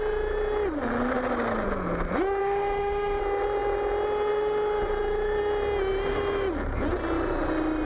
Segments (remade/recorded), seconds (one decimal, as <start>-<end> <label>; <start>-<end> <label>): 0.0-2.4 recorded; 2.4-3.2 remade; 3.2-7.8 recorded